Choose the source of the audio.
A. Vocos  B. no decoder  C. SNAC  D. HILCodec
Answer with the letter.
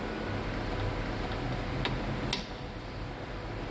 B